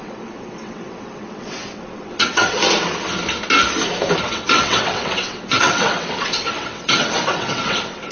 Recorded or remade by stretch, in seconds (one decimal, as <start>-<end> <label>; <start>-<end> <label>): 0.0-2.6 remade; 2.6-4.2 recorded; 4.2-8.1 remade